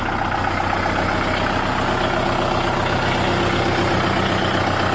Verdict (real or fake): real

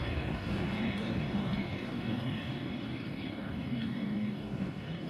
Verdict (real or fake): fake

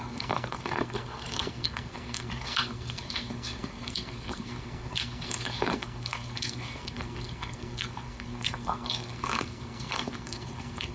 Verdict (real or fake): fake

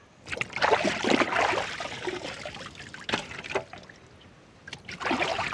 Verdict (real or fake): real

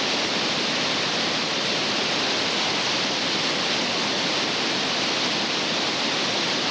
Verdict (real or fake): real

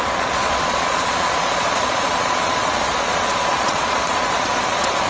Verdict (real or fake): fake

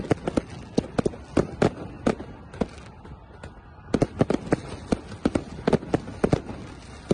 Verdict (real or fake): real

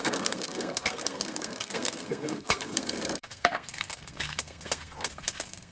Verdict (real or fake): fake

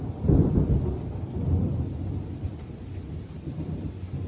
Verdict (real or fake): real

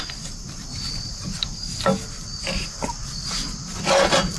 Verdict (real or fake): real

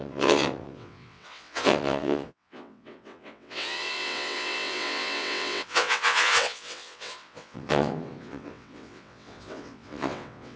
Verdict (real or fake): fake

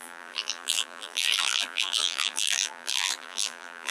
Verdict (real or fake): fake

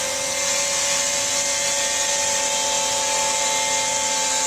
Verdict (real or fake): real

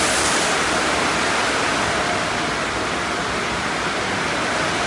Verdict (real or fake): real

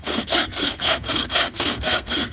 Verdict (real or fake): fake